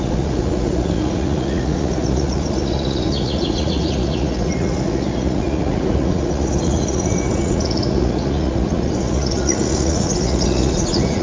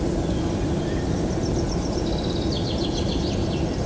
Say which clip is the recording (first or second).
second